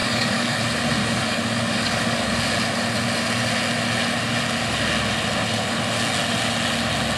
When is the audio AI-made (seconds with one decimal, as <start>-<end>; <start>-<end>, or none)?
0.0-0.6; 1.0-2.3